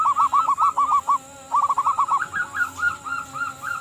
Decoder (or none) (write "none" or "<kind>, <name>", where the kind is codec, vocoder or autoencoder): none